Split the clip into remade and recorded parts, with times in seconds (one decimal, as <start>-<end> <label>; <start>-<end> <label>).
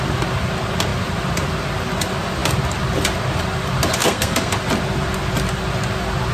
0.0-4.0 recorded; 4.0-4.5 remade; 4.5-6.3 recorded